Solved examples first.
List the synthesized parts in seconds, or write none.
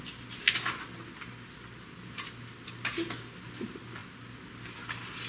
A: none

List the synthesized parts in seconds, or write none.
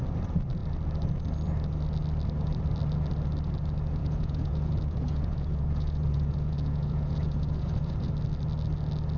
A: 4.0-8.1 (vocoder, Vocos)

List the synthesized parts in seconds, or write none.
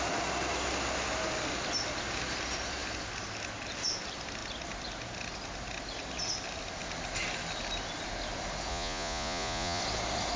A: 8.7-9.8 (vocoder, Vocos)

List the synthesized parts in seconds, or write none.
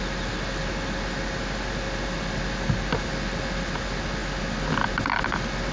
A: none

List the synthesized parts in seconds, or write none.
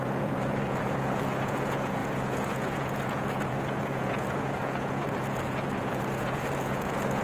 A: 0.0-7.2 (vocoder, Vocos)